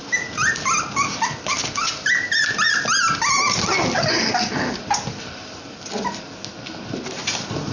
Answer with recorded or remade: recorded